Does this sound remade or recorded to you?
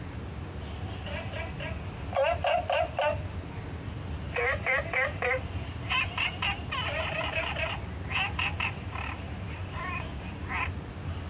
recorded